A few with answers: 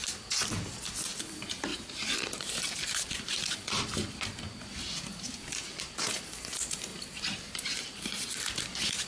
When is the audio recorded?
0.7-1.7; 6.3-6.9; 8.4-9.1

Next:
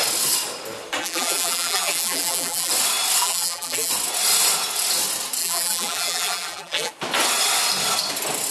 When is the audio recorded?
0.0-1.0; 2.7-3.2; 3.9-5.4; 6.9-8.5

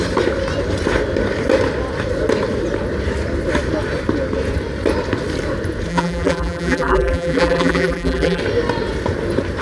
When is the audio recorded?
0.0-5.9; 8.4-9.6

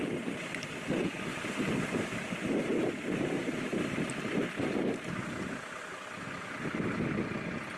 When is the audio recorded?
0.0-1.3; 5.8-7.8